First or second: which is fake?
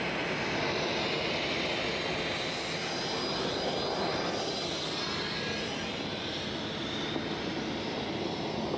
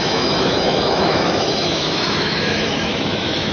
second